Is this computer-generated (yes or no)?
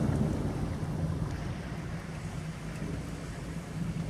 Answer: no